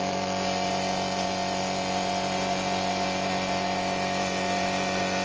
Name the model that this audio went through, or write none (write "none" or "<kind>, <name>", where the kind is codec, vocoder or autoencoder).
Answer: vocoder, Vocos